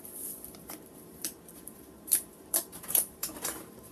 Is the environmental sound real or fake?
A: fake